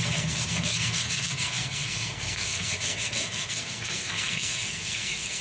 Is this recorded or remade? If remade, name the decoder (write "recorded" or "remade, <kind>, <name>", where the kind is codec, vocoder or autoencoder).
remade, codec, SNAC